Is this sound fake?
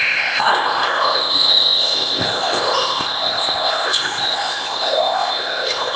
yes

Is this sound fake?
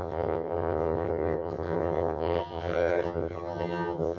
yes